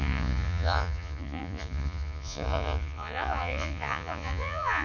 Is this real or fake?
fake